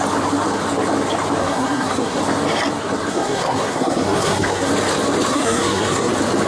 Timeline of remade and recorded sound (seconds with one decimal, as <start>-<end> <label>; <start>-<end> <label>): 0.0-1.4 recorded; 1.4-2.2 remade; 2.2-3.1 recorded; 3.1-4.7 remade; 4.7-5.3 recorded; 5.3-6.1 remade; 6.1-6.5 recorded